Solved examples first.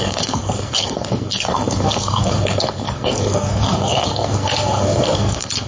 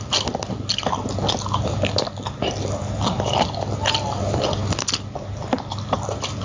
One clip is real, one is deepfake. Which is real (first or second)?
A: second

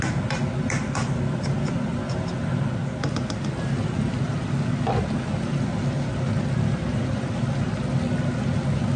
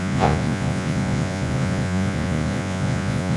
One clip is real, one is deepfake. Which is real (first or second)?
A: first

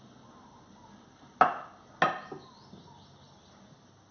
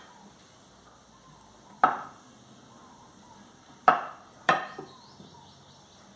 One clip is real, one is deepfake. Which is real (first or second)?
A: first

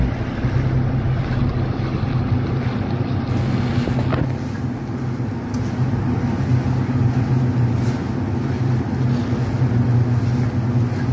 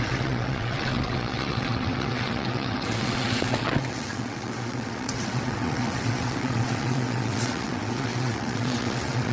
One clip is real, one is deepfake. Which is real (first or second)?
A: first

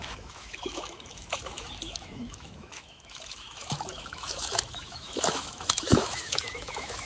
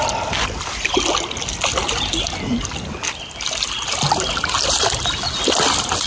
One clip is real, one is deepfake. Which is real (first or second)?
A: second